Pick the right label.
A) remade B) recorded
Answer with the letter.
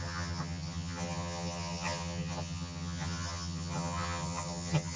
A